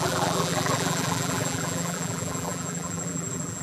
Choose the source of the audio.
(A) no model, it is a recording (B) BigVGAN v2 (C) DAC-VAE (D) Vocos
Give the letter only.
B